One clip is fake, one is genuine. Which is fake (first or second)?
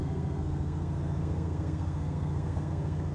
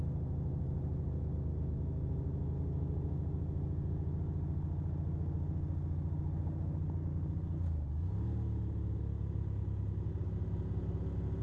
first